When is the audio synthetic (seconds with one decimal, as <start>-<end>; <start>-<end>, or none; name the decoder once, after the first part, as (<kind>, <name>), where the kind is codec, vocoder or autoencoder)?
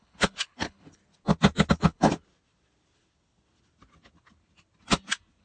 0.0-1.0 (codec, HILCodec); 1.7-2.1